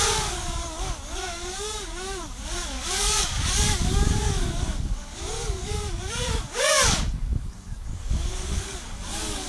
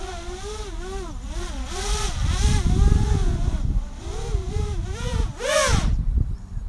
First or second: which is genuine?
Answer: second